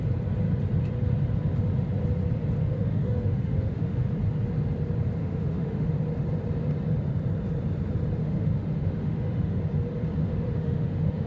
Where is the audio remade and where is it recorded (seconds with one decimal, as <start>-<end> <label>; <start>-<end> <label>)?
0.0-2.6 recorded; 2.6-4.1 remade; 4.1-5.2 recorded; 5.2-5.9 remade; 5.9-8.2 recorded; 8.2-9.6 remade; 9.6-10.2 recorded; 10.2-11.3 remade